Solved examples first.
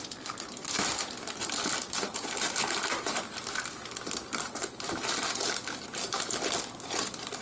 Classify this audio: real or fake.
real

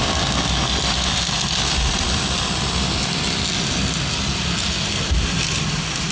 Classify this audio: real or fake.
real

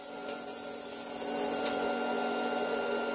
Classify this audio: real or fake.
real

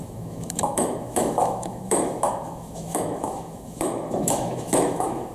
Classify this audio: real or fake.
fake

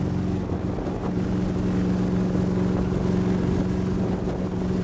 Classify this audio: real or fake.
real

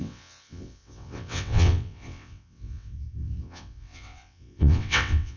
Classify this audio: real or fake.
fake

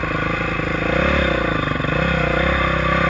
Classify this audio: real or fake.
real